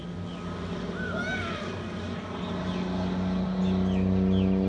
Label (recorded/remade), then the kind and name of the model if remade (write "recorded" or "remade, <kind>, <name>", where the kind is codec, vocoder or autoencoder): recorded